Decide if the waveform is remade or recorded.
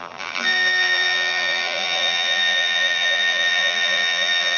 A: remade